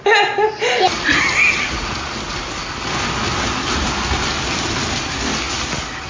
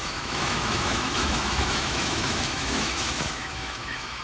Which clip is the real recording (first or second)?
first